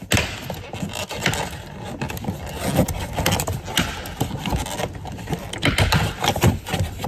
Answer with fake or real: real